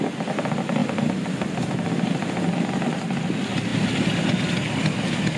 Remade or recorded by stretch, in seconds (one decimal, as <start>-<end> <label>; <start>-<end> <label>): 0.0-5.4 recorded